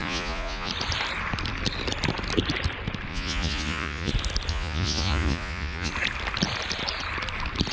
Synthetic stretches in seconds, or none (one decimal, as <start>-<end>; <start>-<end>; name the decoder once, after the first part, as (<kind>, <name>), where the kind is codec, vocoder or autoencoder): 0.0-0.7 (vocoder, Vocos); 3.1-4.1; 4.5-5.9